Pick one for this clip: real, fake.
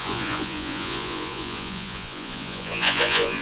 fake